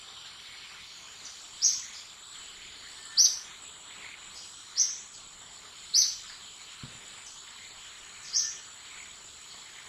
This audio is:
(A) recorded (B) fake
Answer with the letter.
A